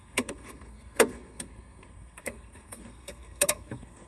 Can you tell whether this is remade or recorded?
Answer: remade